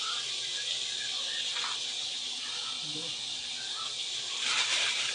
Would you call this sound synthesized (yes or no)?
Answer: no